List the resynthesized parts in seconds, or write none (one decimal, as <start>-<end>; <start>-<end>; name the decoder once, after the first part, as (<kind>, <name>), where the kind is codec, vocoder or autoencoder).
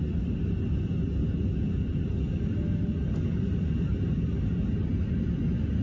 none